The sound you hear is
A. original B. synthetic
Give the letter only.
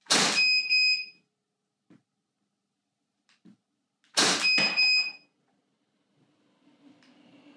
A